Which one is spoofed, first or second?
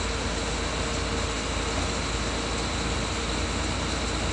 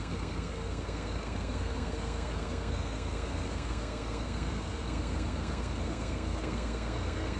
second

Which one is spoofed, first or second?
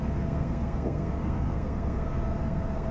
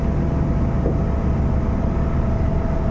first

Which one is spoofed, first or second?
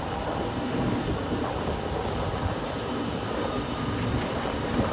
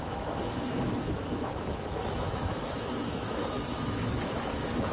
second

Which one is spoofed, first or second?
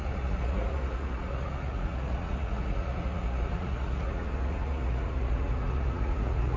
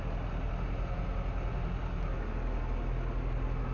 first